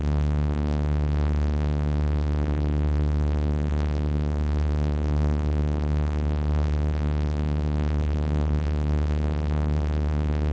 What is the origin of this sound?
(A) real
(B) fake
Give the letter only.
B